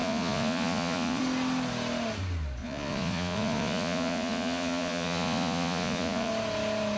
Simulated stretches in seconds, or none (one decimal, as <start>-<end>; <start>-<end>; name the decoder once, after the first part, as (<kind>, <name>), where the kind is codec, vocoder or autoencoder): 0.0-1.2 (vocoder, Vocos); 2.6-6.3